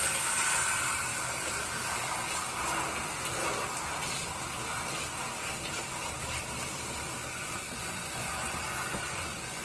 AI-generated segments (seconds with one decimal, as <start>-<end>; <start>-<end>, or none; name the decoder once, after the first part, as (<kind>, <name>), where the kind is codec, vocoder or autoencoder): 7.2-9.6 (vocoder, Vocos)

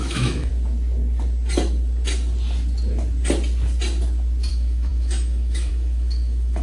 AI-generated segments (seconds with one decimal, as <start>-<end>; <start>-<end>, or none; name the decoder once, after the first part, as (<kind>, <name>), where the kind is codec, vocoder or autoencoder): 0.0-0.5 (autoencoder, DAC-VAE); 4.5-6.6

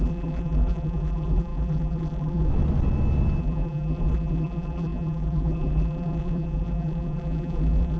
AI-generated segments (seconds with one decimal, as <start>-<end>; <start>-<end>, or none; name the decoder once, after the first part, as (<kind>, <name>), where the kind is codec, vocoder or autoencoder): 0.0-2.5 (vocoder, BigVGAN v2); 3.4-8.0

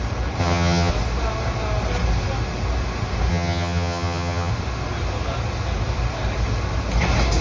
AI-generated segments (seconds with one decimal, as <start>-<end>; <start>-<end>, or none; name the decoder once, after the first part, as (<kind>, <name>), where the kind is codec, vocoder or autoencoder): 0.4-0.9 (vocoder, HiFi-GAN); 3.3-4.5